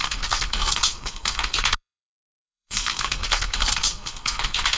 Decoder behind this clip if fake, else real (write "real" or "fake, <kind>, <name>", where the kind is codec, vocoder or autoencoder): fake, codec, SNAC